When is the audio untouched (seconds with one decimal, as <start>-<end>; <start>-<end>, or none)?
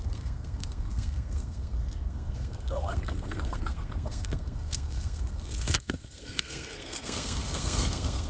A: none